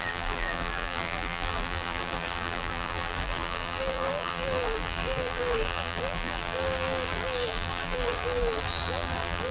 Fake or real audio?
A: fake